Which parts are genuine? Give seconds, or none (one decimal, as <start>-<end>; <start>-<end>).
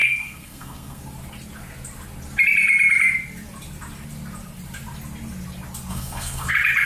1.0-5.9; 6.5-6.9